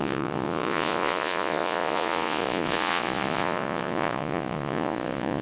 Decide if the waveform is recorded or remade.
remade